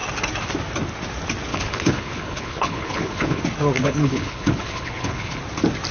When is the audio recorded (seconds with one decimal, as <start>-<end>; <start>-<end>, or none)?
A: 0.0-1.5; 3.4-3.8; 5.4-5.9